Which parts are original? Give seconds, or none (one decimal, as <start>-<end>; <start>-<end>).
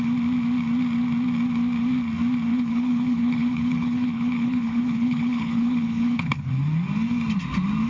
0.0-2.5; 6.5-7.9